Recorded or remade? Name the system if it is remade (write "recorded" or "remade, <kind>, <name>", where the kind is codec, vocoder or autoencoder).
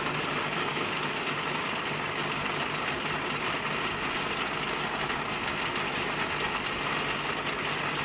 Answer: recorded